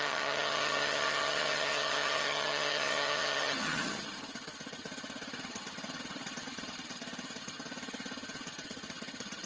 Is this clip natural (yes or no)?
no